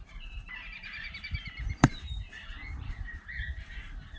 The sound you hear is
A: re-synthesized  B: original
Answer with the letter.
A